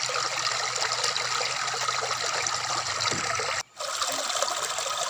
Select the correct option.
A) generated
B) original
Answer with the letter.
B